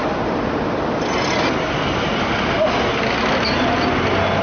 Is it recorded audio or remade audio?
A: recorded